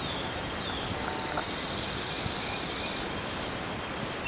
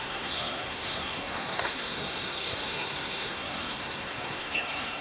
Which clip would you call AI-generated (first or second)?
second